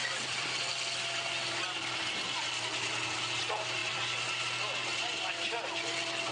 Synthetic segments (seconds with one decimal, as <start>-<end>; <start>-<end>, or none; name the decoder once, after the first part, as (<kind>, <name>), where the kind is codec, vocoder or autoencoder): 0.0-2.9 (vocoder, BigVGAN v2); 3.8-4.3; 4.9-6.3